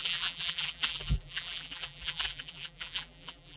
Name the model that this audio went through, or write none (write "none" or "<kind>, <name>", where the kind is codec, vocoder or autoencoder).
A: vocoder, BigVGAN v2